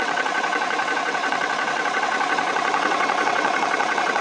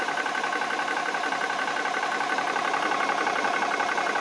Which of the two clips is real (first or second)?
second